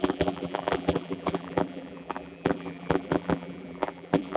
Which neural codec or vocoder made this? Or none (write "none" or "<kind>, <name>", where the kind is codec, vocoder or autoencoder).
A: vocoder, BigVGAN v2